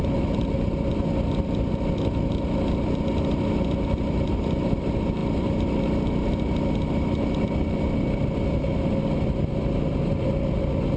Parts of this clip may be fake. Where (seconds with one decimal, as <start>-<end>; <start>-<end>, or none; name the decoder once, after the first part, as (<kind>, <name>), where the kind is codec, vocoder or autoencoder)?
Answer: none